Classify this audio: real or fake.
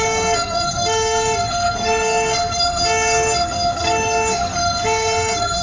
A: fake